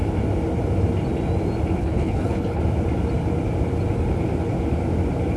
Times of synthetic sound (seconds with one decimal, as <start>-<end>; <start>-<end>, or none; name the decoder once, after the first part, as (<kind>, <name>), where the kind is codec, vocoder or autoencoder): 1.8-2.6 (codec, HILCodec)